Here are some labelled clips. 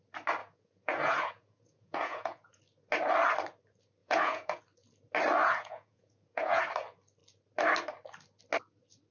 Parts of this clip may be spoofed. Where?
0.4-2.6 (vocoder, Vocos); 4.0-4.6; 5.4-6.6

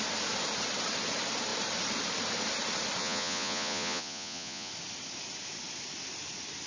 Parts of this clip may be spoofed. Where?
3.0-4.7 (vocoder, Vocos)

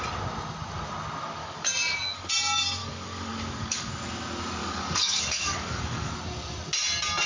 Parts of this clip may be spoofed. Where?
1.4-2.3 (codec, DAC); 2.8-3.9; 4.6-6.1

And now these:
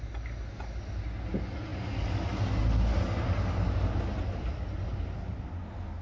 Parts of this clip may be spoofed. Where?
none